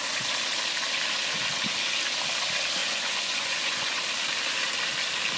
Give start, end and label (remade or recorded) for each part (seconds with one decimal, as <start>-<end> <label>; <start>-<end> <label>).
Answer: 0.0-2.8 recorded; 2.8-4.0 remade; 4.0-5.4 recorded